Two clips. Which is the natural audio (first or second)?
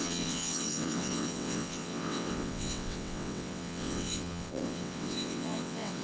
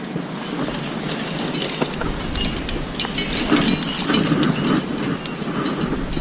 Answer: second